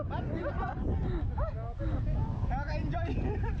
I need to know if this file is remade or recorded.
recorded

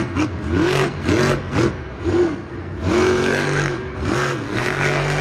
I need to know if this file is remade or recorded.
remade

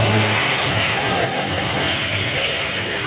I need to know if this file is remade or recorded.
remade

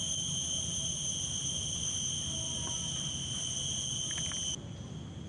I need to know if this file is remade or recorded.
recorded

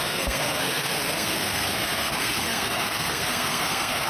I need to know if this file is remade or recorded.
remade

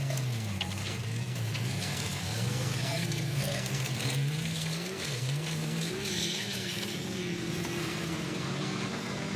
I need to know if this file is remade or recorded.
remade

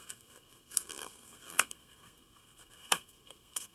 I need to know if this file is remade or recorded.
remade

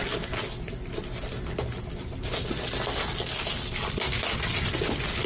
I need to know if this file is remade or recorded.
recorded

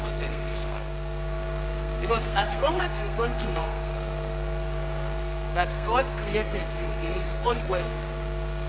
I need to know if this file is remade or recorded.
remade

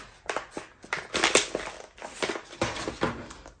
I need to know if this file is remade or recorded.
recorded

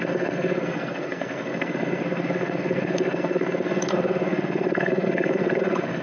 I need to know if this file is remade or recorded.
remade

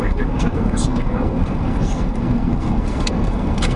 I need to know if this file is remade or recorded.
remade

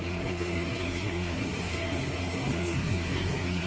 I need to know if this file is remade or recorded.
remade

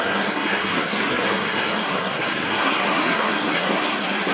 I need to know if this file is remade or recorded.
remade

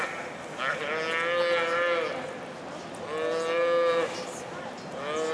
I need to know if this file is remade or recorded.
recorded